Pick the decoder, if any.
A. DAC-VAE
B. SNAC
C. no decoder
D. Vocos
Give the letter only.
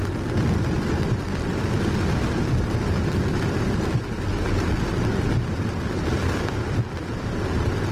C